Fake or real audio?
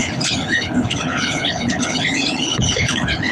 fake